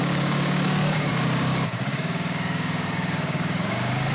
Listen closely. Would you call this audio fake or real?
fake